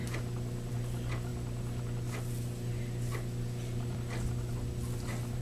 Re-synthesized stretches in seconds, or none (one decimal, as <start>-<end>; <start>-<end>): none